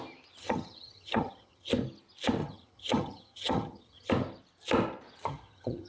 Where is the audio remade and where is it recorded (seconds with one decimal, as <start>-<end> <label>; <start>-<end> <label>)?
0.0-0.4 recorded; 0.4-1.7 remade; 1.7-2.4 recorded; 2.4-4.1 remade; 4.1-5.3 recorded; 5.3-5.9 remade